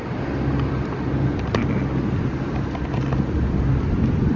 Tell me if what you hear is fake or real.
real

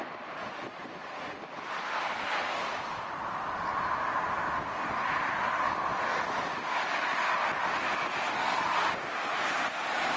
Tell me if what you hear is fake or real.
real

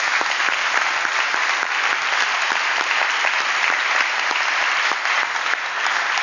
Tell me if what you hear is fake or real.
real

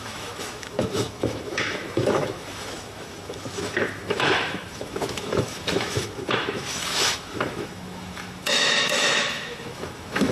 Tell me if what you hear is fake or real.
fake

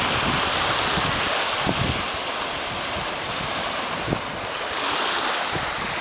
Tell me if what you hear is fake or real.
real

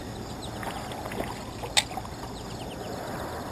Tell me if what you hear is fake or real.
real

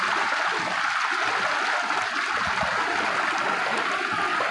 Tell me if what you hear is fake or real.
real